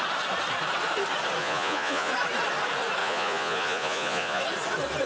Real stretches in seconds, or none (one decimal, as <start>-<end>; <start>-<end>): 0.0-1.4; 2.1-3.0; 4.4-5.1